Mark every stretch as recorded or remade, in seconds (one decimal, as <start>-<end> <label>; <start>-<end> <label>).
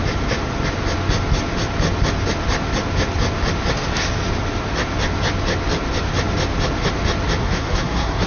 0.0-7.4 recorded; 7.4-8.3 remade